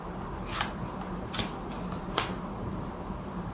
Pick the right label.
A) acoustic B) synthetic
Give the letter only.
B